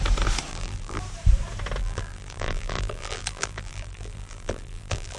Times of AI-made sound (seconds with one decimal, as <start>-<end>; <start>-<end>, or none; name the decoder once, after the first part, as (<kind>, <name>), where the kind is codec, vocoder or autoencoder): 0.5-1.0 (vocoder, BigVGAN v2); 1.8-5.2